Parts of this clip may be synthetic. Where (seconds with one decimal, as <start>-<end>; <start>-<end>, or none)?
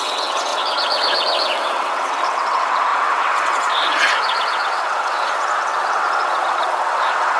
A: 0.0-7.4